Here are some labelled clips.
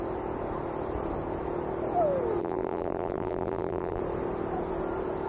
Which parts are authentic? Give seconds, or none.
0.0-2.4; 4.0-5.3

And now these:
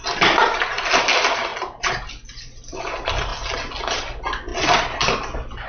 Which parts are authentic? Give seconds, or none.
0.0-5.7

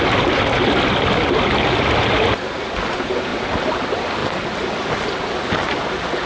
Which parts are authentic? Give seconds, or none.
0.0-6.3

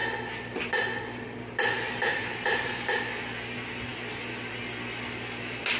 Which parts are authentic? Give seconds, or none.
0.0-2.1; 3.0-5.8

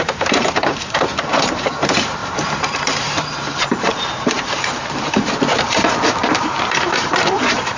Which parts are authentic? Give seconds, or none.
none

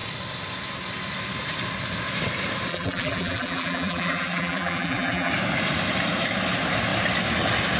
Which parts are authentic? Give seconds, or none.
0.0-2.7; 5.3-7.8